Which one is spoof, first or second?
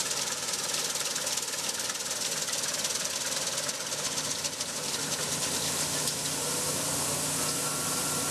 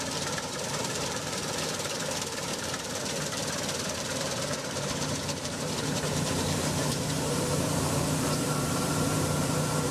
second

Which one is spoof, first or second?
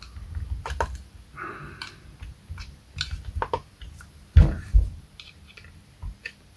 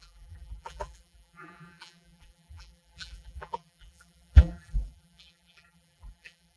second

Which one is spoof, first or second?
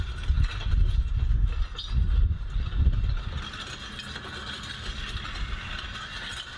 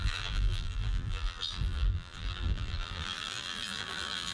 second